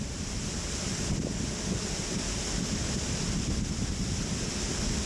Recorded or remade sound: recorded